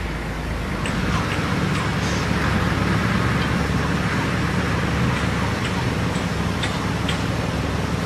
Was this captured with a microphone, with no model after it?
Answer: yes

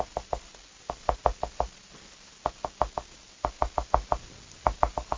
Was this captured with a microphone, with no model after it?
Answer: yes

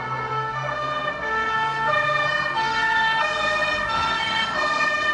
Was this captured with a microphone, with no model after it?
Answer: no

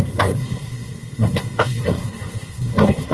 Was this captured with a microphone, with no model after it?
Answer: no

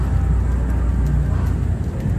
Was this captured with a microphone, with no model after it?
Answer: yes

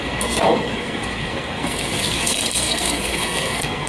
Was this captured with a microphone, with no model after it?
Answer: no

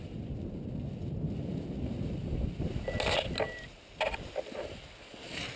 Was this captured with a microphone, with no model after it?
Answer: yes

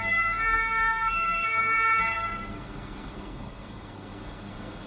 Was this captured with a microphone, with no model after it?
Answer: no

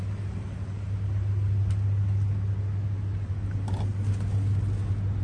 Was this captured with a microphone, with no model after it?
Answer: yes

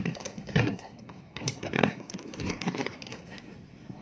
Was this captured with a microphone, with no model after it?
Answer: no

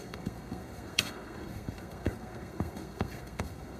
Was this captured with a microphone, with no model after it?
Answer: no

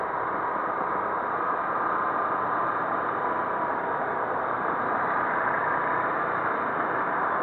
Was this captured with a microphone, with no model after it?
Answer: yes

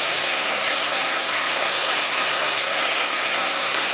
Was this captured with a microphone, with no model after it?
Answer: no